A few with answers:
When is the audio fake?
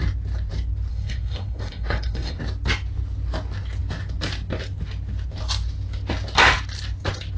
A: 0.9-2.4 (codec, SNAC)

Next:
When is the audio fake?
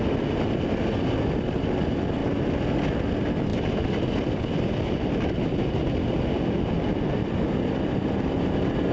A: none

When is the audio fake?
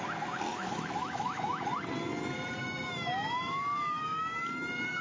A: 0.5-1.6 (autoencoder, DAC-VAE); 2.6-5.0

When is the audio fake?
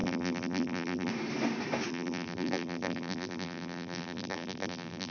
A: 0.0-1.1 (vocoder, BigVGAN v2); 1.9-5.1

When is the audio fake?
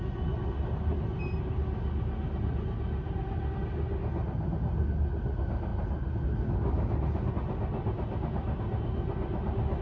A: none